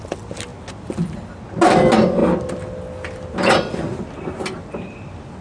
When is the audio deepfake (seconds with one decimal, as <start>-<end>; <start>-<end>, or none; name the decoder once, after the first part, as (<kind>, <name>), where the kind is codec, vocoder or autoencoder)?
none